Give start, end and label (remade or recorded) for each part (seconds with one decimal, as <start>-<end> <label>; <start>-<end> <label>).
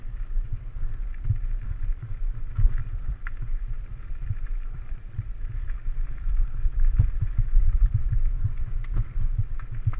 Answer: 0.0-2.8 recorded; 2.8-3.3 remade; 3.3-3.9 recorded; 3.9-8.6 remade; 8.6-10.0 recorded